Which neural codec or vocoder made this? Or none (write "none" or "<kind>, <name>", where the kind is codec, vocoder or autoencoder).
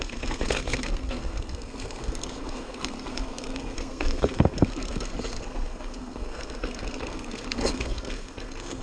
codec, SNAC